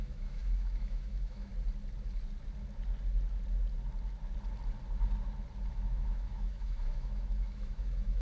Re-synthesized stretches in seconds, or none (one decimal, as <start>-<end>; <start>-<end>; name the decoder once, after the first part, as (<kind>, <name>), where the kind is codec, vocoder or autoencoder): 0.0-1.5 (autoencoder, DAC-VAE); 5.7-8.2